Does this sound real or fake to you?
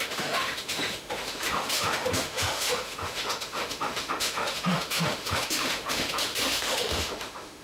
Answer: fake